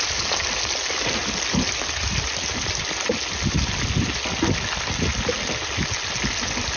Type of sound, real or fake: real